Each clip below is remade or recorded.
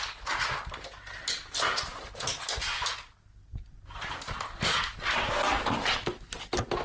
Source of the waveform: recorded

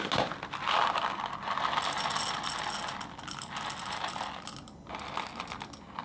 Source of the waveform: recorded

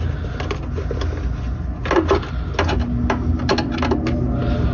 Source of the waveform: recorded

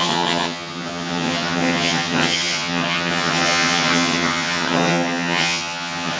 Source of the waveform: remade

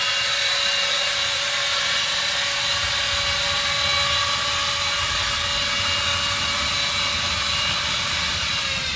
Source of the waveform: recorded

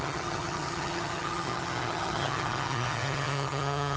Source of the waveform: remade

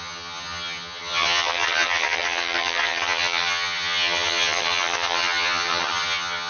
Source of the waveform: remade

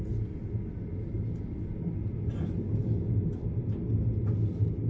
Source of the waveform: recorded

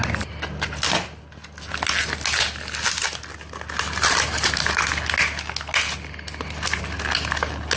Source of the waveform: recorded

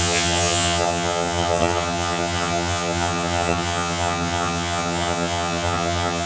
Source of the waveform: remade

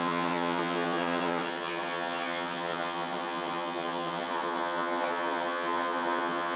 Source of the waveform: remade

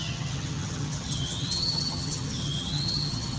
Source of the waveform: remade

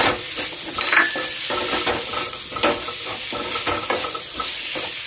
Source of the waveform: recorded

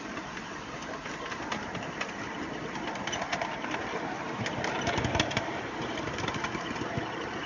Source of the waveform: recorded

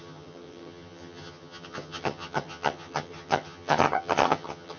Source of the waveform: remade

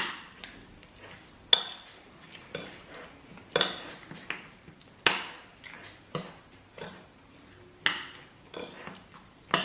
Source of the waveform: recorded